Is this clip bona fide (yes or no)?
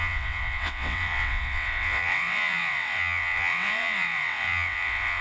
no